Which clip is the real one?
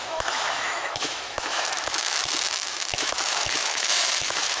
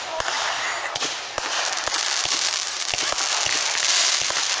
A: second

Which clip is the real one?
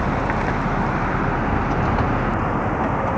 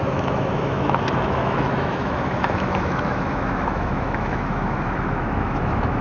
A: first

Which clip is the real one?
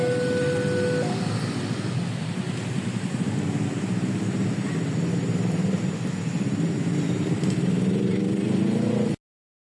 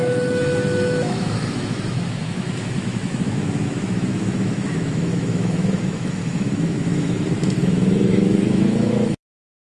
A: first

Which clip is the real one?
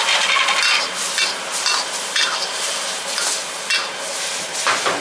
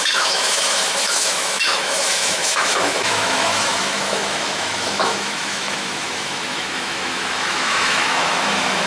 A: first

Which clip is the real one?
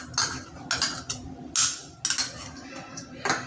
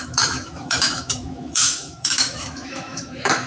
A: first